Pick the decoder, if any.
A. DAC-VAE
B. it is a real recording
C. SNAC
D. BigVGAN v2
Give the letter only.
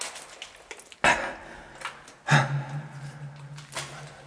B